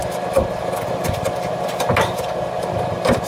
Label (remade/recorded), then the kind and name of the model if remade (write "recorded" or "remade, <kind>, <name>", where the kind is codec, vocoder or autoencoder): recorded